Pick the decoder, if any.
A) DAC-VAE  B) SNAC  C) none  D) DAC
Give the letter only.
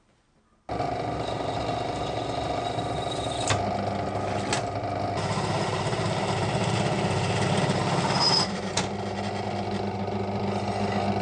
C